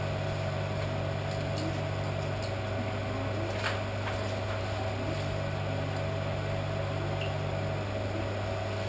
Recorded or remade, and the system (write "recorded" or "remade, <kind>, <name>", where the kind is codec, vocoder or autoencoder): recorded